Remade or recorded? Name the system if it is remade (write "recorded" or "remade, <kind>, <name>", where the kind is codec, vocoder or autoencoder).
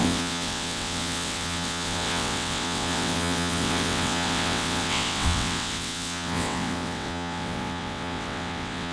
remade, vocoder, WaveNeXt